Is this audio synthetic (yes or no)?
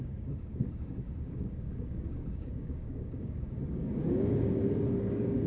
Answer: yes